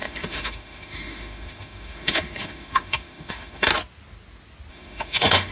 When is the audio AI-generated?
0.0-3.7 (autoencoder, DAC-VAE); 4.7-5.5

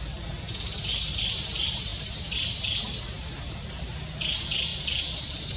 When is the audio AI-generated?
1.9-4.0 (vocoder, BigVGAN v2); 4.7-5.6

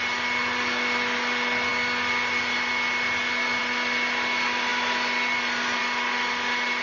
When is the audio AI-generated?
none

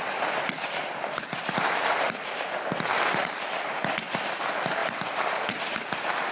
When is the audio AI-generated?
none